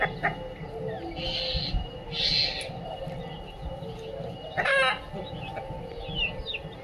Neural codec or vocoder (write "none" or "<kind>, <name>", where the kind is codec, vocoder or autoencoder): none